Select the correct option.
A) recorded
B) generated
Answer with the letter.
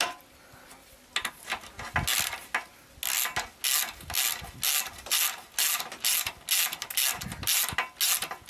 A